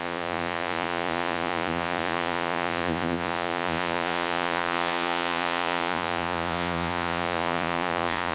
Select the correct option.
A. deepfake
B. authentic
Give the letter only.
A